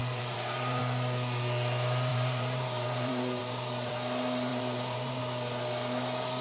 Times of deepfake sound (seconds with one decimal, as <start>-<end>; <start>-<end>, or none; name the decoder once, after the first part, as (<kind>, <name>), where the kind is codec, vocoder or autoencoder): 0.0-0.8 (vocoder, BigVGAN v2); 2.1-3.9; 4.5-5.2